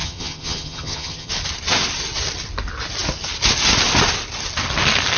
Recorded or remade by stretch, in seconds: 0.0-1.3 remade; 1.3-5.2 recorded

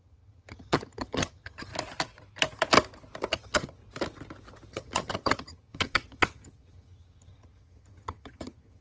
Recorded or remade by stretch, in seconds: 0.0-1.7 remade; 1.7-3.3 recorded; 3.3-3.8 remade; 3.8-4.7 recorded; 4.7-8.8 remade

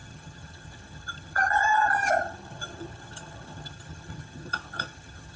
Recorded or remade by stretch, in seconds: 0.0-5.4 remade

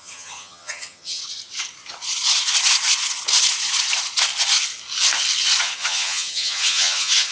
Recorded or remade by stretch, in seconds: 0.0-1.2 remade; 1.2-5.6 recorded; 5.6-7.3 remade

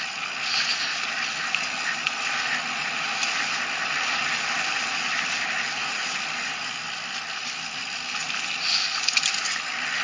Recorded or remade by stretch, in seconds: 0.0-10.0 recorded